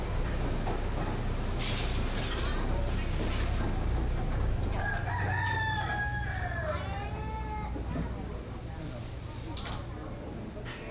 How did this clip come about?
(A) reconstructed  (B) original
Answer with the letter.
B